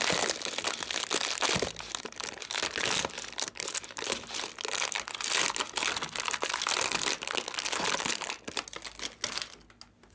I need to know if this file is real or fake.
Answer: real